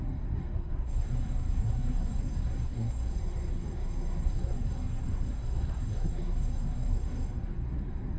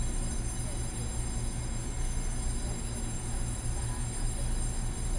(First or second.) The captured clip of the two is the second